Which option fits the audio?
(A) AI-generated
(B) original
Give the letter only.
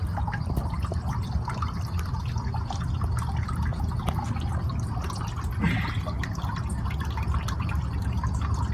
B